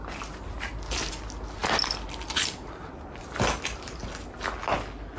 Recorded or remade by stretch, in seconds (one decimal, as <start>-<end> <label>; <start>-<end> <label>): 0.0-1.6 recorded; 1.6-3.2 remade; 3.2-5.2 recorded